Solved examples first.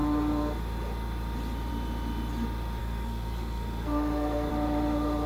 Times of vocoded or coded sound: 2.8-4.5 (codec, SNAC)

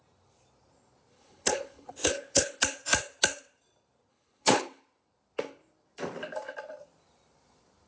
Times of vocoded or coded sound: 1.1-2.6 (codec, HILCodec); 4.1-4.8

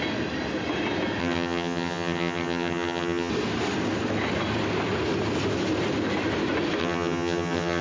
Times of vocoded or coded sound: 1.2-3.3 (vocoder, HiFi-GAN); 6.8-7.8